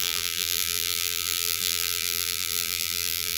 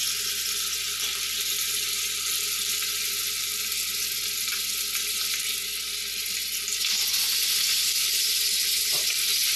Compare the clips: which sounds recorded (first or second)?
second